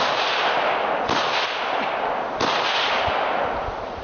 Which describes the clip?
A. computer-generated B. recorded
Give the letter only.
B